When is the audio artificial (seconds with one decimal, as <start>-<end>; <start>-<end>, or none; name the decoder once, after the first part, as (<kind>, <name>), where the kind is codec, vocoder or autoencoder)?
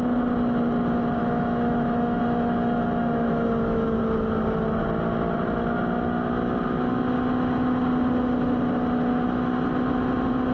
1.2-4.0 (autoencoder, DAC-VAE)